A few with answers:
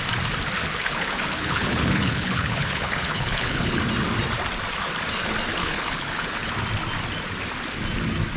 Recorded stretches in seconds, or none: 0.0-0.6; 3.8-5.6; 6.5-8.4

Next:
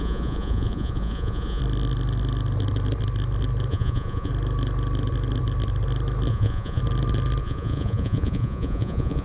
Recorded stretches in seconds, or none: 1.6-3.7; 4.3-6.3; 6.8-7.4